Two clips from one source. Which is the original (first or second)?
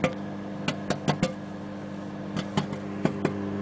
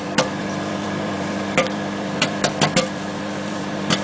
first